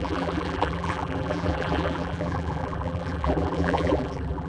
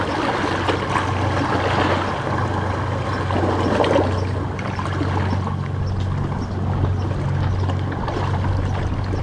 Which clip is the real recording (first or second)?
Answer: second